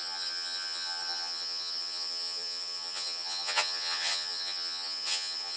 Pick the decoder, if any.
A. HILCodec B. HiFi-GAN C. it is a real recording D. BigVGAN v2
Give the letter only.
B